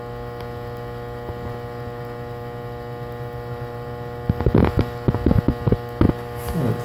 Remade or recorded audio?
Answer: recorded